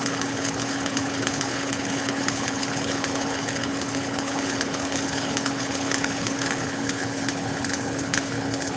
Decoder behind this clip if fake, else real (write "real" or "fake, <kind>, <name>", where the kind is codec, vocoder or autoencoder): fake, codec, HILCodec